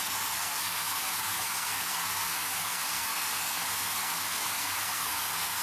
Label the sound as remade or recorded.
remade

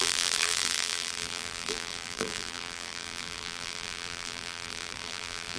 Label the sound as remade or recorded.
remade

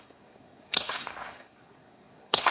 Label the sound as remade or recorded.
remade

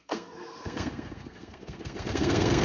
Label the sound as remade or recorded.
remade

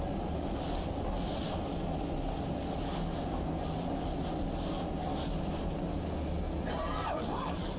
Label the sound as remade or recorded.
recorded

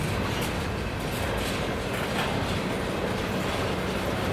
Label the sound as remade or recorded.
recorded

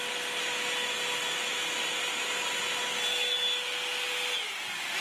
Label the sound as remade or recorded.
recorded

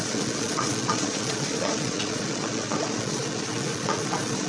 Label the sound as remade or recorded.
remade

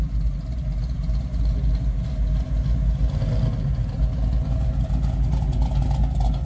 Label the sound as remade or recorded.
recorded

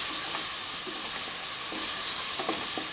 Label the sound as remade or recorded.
recorded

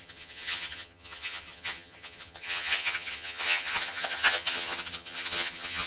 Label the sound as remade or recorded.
remade